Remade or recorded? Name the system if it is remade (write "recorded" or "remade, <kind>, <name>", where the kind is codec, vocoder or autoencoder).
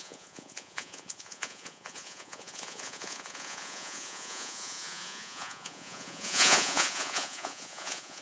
remade, vocoder, Vocos